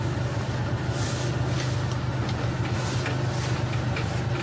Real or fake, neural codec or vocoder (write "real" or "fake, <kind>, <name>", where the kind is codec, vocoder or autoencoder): real